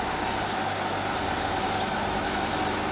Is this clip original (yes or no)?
yes